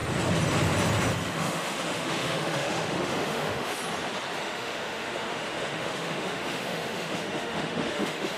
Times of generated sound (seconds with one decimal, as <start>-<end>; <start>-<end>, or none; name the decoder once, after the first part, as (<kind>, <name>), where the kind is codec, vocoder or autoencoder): 1.3-3.8 (autoencoder, DAC-VAE); 4.4-8.4